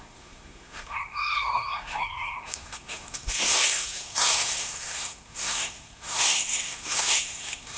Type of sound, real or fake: fake